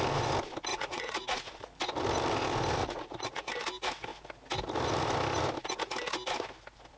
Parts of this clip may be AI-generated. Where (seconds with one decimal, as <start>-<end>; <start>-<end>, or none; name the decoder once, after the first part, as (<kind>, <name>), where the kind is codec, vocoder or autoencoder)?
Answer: 0.7-1.5 (vocoder, Vocos); 2.8-3.5